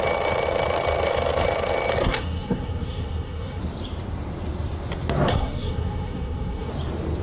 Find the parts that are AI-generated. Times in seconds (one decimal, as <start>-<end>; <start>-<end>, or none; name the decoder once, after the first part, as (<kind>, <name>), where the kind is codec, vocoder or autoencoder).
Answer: 2.0-3.6 (codec, SNAC); 5.3-6.7